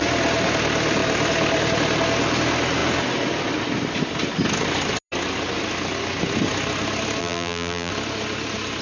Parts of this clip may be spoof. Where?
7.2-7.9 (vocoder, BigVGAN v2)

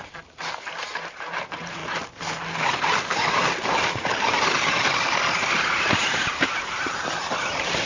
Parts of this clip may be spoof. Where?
0.0-1.8 (vocoder, BigVGAN v2); 5.5-7.9

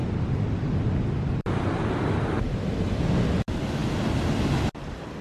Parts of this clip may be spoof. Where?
none

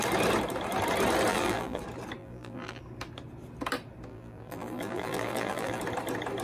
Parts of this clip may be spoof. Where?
1.3-1.8 (vocoder, BigVGAN v2); 2.2-2.8; 4.1-5.8

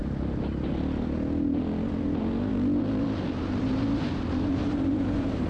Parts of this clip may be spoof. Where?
3.3-5.5 (vocoder, BigVGAN v2)

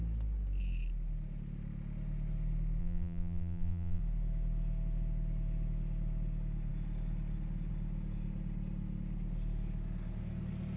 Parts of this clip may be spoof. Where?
2.8-4.0 (vocoder, BigVGAN v2)

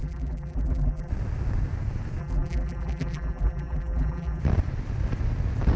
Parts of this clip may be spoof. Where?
0.0-1.1 (vocoder, BigVGAN v2); 2.2-4.4